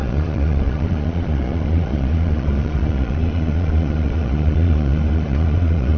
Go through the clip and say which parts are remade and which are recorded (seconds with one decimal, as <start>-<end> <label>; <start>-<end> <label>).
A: 0.0-6.0 remade